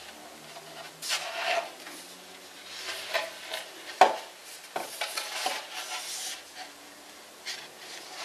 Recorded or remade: recorded